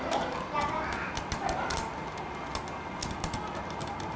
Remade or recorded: recorded